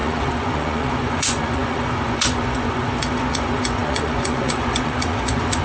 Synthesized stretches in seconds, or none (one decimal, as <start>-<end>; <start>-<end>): 0.0-5.6